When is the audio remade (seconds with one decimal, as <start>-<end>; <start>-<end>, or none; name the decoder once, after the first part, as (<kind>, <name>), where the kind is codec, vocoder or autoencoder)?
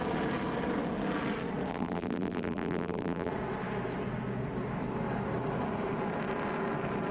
1.7-3.3 (vocoder, BigVGAN v2)